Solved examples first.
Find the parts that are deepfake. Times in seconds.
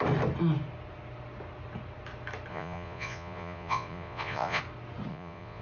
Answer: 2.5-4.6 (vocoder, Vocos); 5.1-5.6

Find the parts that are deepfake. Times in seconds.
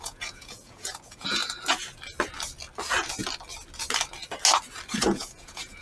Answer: 0.0-1.4 (vocoder, Vocos); 4.9-5.8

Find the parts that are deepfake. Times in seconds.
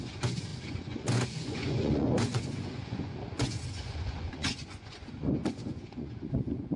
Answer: 0.0-6.8 (vocoder, Vocos)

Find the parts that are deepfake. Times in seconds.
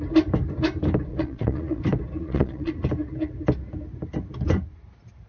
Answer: 1.1-1.8 (vocoder, Vocos); 2.2-2.7